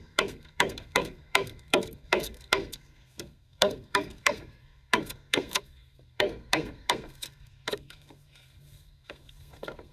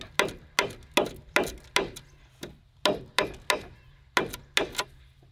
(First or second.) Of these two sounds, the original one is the second